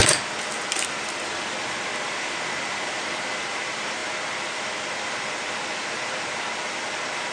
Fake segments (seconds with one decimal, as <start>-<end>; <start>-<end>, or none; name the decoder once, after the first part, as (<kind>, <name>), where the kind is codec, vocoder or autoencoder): none